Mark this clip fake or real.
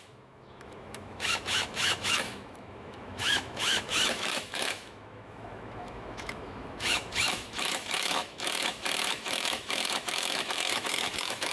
fake